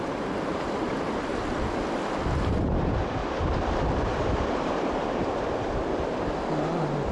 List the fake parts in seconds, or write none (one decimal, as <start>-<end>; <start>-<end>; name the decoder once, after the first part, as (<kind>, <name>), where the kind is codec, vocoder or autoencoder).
0.0-1.3 (vocoder, BigVGAN v2); 2.8-3.2; 4.0-7.1